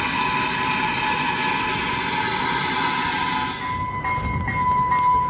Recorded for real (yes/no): yes